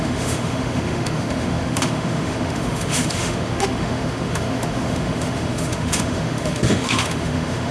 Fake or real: fake